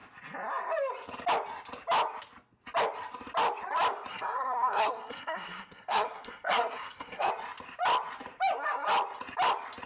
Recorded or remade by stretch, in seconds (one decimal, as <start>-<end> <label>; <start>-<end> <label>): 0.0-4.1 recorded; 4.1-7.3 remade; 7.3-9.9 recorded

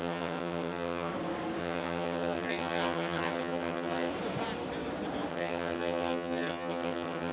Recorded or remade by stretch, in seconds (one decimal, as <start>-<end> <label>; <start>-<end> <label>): 0.0-1.1 remade; 1.1-1.6 recorded; 1.6-4.1 remade; 4.1-5.3 recorded; 5.3-7.3 remade

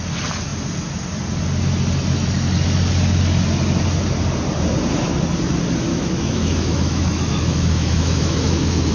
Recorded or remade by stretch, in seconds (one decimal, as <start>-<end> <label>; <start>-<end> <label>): 0.0-5.9 recorded; 5.9-8.9 remade

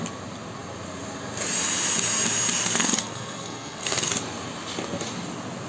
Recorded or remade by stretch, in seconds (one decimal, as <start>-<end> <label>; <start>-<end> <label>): 0.0-2.6 recorded; 2.6-4.1 remade; 4.1-5.7 recorded

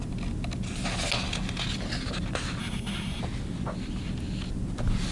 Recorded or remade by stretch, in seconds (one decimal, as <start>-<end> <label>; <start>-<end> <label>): 0.0-2.6 recorded; 2.6-3.2 remade; 3.2-5.1 recorded

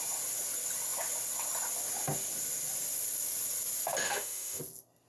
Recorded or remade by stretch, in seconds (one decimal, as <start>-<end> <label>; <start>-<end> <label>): 0.0-4.0 recorded; 4.0-4.6 remade; 4.6-5.1 recorded

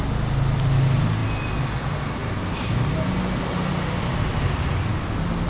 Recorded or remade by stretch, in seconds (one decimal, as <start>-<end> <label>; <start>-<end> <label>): 0.0-5.5 recorded